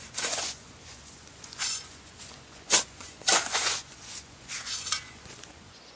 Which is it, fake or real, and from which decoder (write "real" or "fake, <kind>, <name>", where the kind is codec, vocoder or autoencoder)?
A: fake, vocoder, Vocos